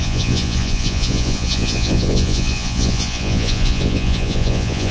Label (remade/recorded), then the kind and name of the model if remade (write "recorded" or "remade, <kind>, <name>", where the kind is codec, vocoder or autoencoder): remade, vocoder, Vocos